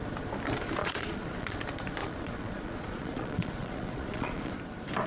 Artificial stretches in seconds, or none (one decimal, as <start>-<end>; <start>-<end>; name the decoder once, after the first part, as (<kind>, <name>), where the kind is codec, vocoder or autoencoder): 0.8-1.6 (vocoder, Vocos); 2.0-4.5